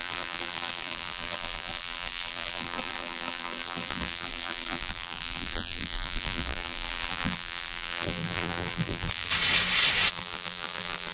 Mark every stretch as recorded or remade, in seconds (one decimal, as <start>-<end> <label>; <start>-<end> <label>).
0.0-9.3 remade; 9.3-10.1 recorded; 10.1-11.1 remade